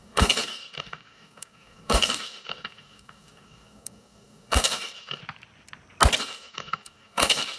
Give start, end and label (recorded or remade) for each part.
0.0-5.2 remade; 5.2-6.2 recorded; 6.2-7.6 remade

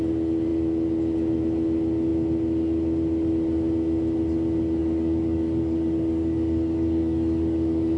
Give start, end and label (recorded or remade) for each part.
0.0-4.8 recorded; 4.8-8.0 remade

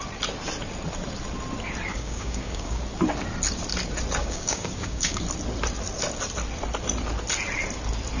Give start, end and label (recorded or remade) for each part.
0.0-1.9 recorded; 1.9-2.8 remade; 2.8-4.2 recorded; 4.2-5.2 remade; 5.2-8.2 recorded

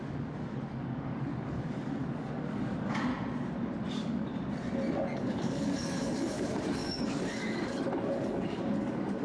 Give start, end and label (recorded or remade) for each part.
0.0-3.1 remade; 3.1-3.9 recorded; 3.9-4.3 remade; 4.3-5.1 recorded; 5.1-9.2 remade

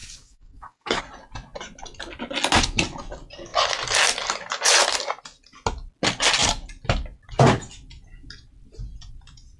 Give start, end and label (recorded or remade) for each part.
0.0-1.0 remade; 1.0-9.6 recorded

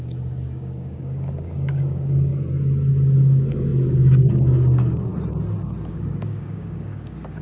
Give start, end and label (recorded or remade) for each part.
0.0-2.3 remade; 2.3-2.9 recorded; 2.9-5.1 remade; 5.1-5.9 recorded; 5.9-7.4 remade